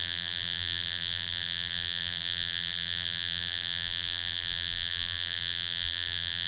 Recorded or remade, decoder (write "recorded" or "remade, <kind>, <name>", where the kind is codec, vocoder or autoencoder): remade, vocoder, BigVGAN v2